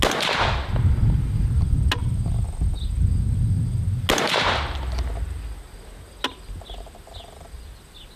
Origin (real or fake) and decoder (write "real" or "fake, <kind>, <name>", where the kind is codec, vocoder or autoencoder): real